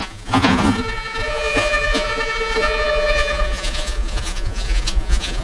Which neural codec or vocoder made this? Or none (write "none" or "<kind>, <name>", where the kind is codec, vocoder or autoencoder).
vocoder, Vocos